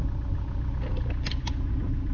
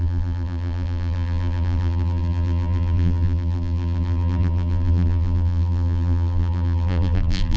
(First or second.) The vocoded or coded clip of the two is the second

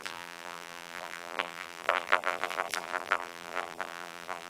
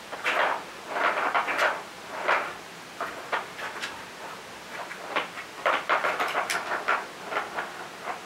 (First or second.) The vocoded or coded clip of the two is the first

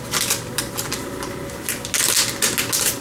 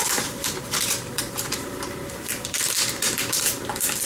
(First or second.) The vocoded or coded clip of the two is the second